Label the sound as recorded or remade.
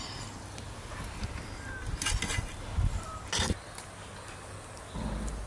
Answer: recorded